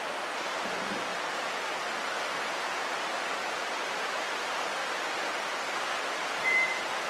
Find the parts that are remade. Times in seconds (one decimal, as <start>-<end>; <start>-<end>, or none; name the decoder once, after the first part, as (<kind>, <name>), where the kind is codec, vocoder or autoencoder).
0.0-1.1 (vocoder, BigVGAN v2); 2.7-4.8; 6.4-7.1